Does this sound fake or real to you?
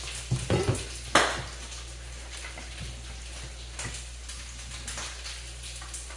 real